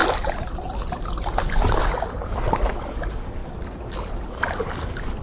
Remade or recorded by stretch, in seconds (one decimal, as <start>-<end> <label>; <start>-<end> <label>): 0.0-1.1 remade; 1.1-5.2 recorded